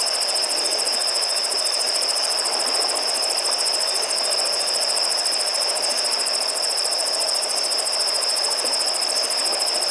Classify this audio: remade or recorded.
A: recorded